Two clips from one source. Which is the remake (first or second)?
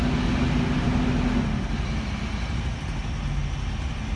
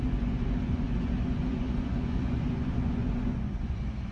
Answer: second